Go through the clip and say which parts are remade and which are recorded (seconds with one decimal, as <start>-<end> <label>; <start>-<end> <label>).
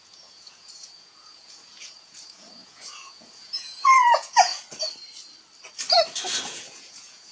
0.0-4.5 remade; 4.5-6.4 recorded; 6.4-7.3 remade